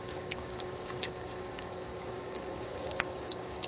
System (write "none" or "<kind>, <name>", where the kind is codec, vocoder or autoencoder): codec, DAC